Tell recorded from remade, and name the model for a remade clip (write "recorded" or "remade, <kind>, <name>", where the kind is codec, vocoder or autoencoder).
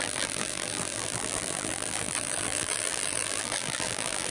remade, vocoder, BigVGAN v2